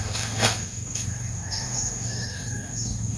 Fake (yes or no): yes